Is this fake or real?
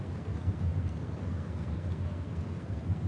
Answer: fake